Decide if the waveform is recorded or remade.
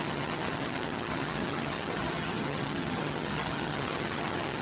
remade